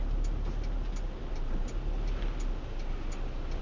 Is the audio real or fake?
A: real